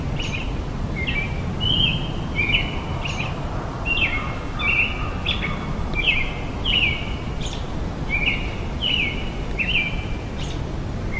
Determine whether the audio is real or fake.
real